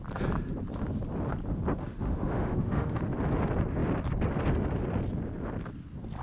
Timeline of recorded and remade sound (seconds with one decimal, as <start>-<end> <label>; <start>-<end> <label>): 0.0-1.8 recorded; 1.8-3.0 remade; 3.0-6.2 recorded